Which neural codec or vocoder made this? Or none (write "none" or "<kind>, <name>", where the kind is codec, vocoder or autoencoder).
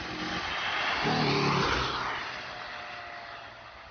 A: none